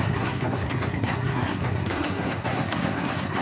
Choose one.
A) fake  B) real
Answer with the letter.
A